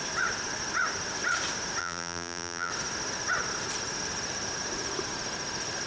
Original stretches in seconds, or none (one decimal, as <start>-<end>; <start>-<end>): 0.0-1.8; 2.7-5.9